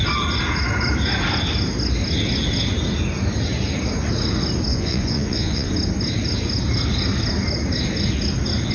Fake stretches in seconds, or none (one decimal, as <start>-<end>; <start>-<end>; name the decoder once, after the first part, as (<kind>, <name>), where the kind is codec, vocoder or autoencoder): 4.7-5.7 (vocoder, Vocos)